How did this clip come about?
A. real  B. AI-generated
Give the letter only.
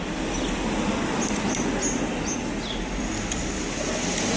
A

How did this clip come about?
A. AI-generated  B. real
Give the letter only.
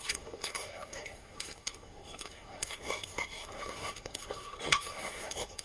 A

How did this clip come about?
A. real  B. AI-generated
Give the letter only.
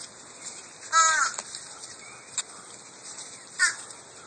A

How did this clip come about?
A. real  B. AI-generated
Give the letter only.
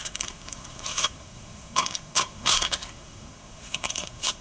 B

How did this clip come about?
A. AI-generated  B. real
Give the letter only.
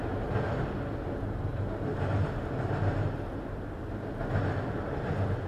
B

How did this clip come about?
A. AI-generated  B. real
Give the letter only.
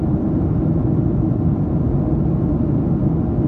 B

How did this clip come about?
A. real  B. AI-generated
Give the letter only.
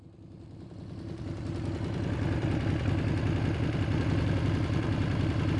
A